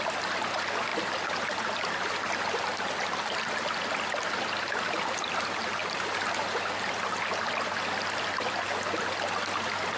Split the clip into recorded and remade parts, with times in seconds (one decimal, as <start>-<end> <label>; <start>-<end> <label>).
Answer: 0.0-10.0 recorded